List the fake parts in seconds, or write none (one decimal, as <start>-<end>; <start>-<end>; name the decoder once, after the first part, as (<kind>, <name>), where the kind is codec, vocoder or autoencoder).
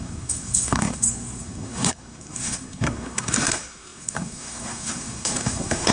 0.0-5.9 (codec, SNAC)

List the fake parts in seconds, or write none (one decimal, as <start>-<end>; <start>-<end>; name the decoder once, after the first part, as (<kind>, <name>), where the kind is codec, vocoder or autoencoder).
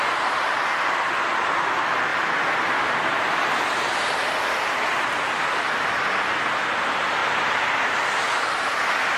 none